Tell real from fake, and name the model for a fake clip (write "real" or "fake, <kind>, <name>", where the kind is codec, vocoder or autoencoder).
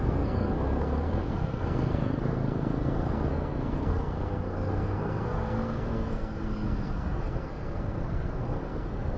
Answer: fake, codec, SNAC